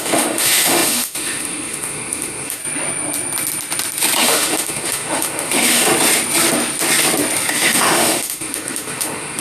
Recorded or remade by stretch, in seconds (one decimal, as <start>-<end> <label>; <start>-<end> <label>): 0.0-2.6 remade; 2.6-4.2 recorded; 4.2-5.9 remade; 5.9-7.5 recorded; 7.5-9.4 remade